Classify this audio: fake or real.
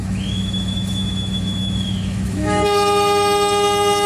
fake